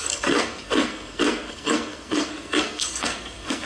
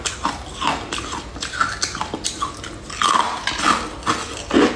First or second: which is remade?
first